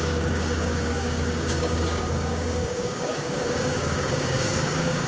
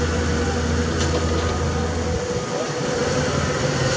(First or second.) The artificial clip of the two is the first